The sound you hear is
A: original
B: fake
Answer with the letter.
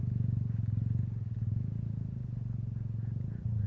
A